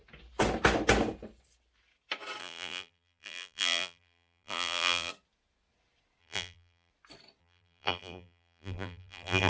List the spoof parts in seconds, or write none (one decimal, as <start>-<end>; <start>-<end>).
2.4-5.1; 6.2-6.9; 7.4-9.5